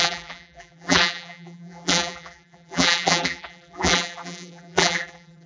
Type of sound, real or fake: fake